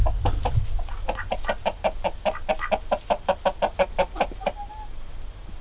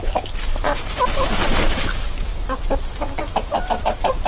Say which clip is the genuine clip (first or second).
first